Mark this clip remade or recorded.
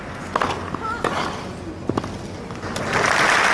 recorded